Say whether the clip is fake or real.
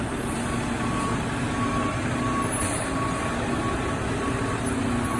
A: real